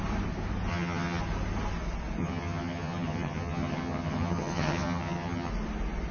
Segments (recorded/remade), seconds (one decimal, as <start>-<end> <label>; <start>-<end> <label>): 0.0-0.7 recorded; 0.7-1.2 remade; 1.2-2.2 recorded; 2.2-5.5 remade; 5.5-6.1 recorded